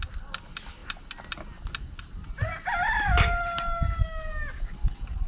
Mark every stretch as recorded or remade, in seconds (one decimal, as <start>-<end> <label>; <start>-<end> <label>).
0.0-5.3 recorded